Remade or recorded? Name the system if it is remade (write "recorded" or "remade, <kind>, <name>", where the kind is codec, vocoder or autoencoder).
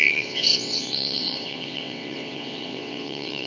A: remade, vocoder, WaveNeXt